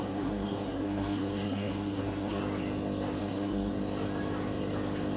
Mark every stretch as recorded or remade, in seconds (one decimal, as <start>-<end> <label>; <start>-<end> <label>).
0.0-2.4 remade; 2.4-3.2 recorded; 3.2-3.7 remade; 3.7-5.2 recorded